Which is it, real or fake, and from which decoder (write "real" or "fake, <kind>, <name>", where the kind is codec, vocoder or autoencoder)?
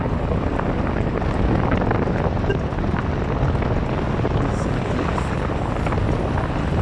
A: real